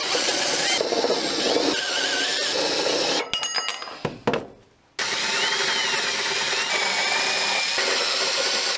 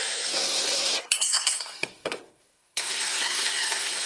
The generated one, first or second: second